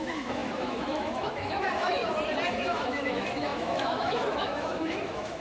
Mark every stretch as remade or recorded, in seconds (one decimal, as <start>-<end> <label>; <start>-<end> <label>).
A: 0.0-2.0 remade; 2.0-2.5 recorded; 2.5-5.4 remade